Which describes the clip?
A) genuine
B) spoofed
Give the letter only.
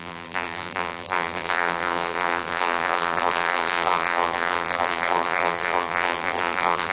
B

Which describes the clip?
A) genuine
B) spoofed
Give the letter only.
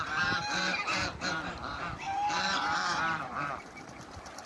B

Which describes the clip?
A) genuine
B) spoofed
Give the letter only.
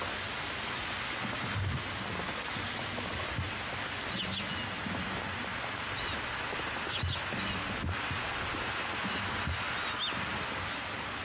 A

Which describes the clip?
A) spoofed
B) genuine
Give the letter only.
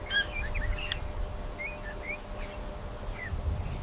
B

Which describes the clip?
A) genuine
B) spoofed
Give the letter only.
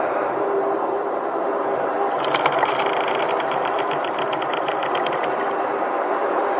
B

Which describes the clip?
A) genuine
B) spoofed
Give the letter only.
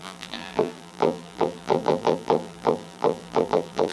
B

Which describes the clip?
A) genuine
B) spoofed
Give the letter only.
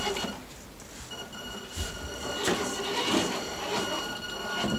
A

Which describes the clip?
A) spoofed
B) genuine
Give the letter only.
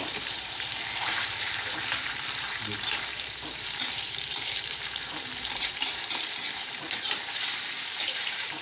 A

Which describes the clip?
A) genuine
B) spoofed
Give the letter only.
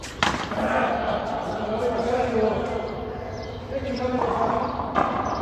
B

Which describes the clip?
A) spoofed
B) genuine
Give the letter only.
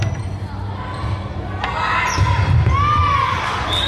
B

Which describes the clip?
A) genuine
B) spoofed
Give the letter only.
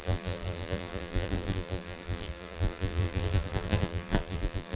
B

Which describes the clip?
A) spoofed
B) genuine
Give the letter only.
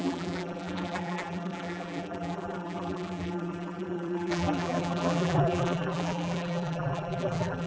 A